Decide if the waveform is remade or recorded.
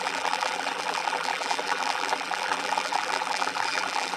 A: remade